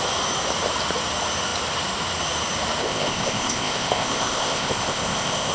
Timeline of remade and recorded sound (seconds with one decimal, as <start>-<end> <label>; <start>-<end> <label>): 0.0-2.8 recorded; 2.8-5.5 remade